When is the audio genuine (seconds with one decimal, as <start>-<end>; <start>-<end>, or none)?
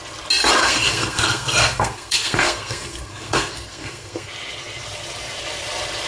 0.0-0.6; 4.3-6.1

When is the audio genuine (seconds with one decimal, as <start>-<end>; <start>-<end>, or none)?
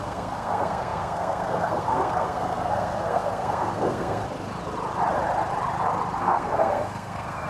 4.2-6.2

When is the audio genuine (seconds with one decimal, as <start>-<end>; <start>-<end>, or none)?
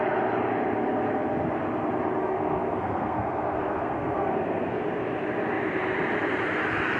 0.0-2.2; 4.8-7.0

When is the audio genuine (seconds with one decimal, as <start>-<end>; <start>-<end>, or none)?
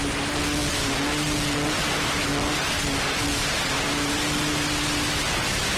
0.0-5.8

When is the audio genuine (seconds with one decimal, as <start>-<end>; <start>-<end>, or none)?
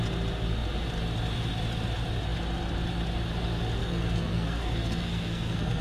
0.0-3.8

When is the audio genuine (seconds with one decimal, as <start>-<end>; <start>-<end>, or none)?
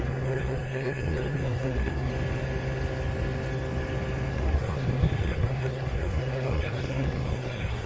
2.1-4.3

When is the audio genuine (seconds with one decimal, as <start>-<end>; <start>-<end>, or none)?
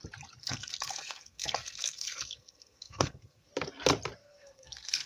0.0-0.4; 3.5-4.2